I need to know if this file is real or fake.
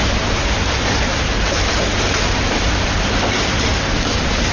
fake